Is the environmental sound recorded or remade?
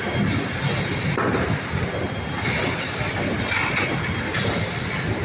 recorded